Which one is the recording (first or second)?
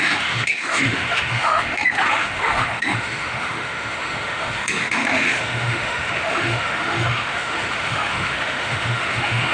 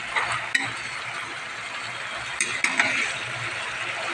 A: second